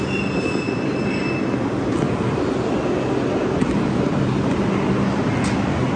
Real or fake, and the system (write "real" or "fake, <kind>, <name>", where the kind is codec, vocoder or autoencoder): real